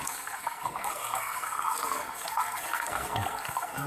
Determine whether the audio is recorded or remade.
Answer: remade